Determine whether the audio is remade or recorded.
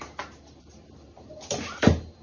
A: recorded